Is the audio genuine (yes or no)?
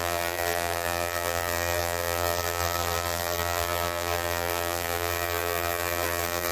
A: no